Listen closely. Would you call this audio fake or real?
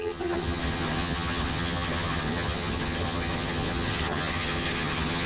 fake